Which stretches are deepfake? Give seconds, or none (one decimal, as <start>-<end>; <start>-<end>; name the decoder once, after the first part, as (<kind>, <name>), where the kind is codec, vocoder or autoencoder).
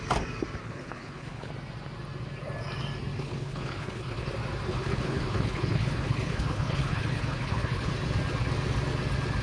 0.6-1.5 (codec, HILCodec); 3.2-4.3; 4.7-7.9